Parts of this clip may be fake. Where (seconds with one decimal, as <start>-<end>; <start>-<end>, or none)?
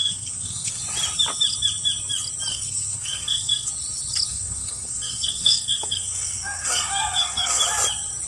0.0-0.8; 2.5-3.7; 4.3-7.6